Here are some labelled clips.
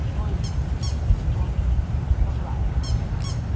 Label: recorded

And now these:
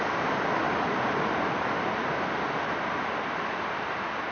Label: recorded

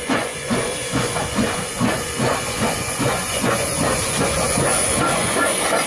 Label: remade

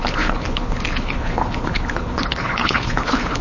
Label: remade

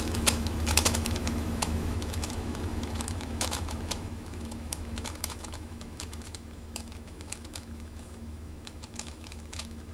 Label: remade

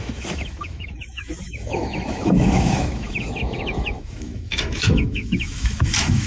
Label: remade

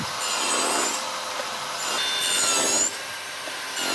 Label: recorded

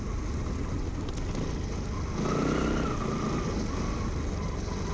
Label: recorded